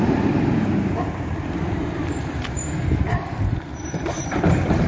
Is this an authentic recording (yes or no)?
no